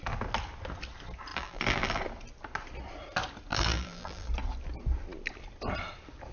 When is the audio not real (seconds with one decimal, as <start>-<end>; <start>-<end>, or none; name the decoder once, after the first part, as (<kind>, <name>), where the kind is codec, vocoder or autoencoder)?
1.3-2.0 (vocoder, BigVGAN v2); 3.5-4.3